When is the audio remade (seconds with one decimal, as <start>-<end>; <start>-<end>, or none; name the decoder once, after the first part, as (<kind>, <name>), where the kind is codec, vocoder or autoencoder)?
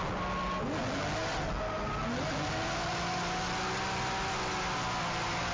none